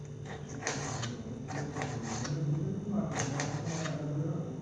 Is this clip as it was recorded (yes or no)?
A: yes